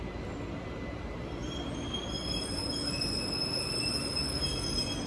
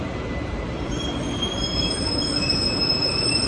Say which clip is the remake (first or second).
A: second